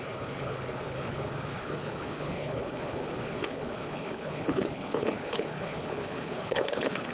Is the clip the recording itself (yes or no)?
no